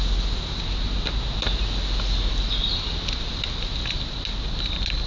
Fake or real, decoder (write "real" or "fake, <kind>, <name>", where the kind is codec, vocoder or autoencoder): real